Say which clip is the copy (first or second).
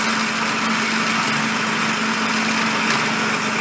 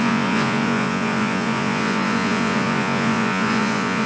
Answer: second